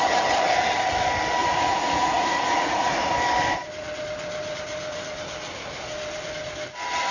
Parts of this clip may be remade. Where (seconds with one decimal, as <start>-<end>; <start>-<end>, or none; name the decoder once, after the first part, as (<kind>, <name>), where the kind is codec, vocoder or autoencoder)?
1.4-3.0 (vocoder, Vocos)